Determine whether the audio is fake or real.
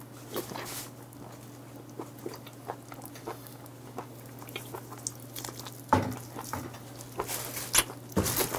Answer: real